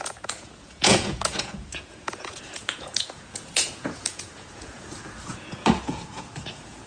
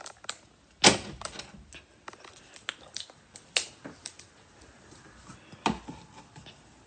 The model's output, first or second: first